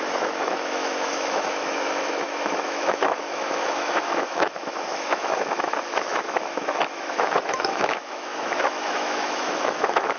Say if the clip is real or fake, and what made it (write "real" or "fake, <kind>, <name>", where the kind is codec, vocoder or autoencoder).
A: fake, autoencoder, DAC-VAE